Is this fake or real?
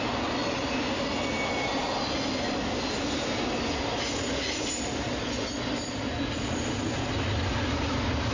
real